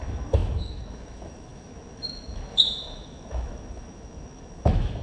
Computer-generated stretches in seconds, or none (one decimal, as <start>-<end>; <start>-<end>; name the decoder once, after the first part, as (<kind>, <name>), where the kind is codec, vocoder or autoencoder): 0.0-5.0 (autoencoder, DAC-VAE)